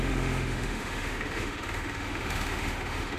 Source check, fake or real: fake